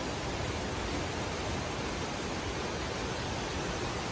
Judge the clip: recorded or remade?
recorded